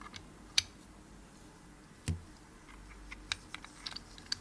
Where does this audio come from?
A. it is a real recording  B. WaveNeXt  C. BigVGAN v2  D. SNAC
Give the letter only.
A